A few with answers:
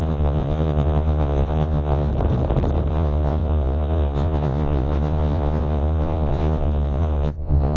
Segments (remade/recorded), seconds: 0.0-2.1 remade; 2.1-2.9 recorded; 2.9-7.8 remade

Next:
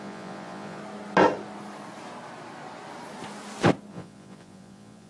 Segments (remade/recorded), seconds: 0.0-0.8 remade; 0.8-3.9 recorded; 3.9-5.1 remade

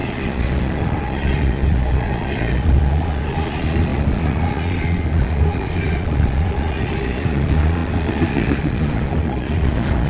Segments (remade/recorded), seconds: 0.0-10.1 remade

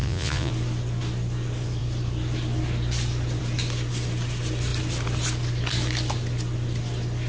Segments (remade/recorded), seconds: 0.0-0.5 remade; 0.5-7.3 recorded

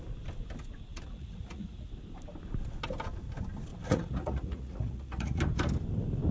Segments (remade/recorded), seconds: 0.0-0.9 recorded; 0.9-1.9 remade; 1.9-3.7 recorded; 3.7-5.4 remade; 5.4-6.3 recorded